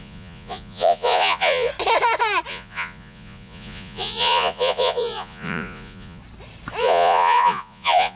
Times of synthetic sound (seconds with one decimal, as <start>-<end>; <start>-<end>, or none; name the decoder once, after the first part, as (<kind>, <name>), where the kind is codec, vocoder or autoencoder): 0.0-1.7 (vocoder, Vocos); 2.5-6.2; 6.8-8.2